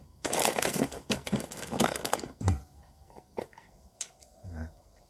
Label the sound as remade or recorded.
remade